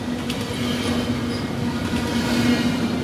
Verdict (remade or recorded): recorded